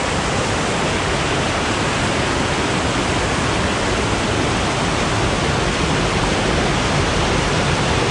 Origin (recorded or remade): recorded